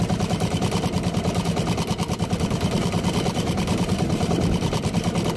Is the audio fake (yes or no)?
no